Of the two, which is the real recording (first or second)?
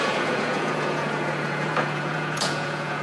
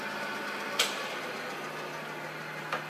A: second